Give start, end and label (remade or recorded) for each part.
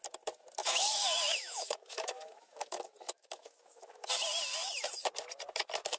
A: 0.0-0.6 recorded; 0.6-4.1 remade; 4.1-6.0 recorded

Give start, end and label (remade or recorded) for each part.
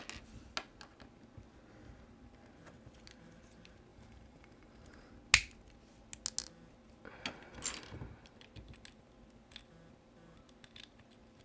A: 0.0-3.9 recorded; 3.9-5.1 remade; 5.1-11.4 recorded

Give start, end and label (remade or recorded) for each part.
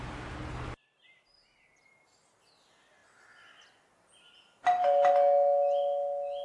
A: 0.0-6.4 recorded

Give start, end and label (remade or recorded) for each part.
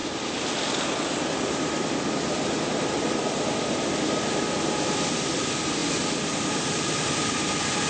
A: 0.0-7.9 recorded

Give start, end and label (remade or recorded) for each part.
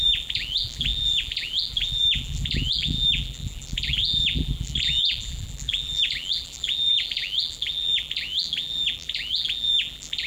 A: 0.0-10.3 remade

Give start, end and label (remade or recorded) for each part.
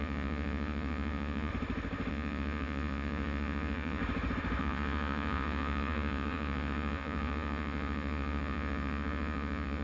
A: 0.0-1.5 remade; 1.5-2.1 recorded; 2.1-4.0 remade; 4.0-4.6 recorded; 4.6-9.8 remade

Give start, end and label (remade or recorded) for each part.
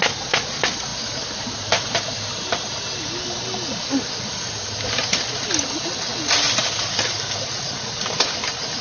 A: 0.0-8.8 recorded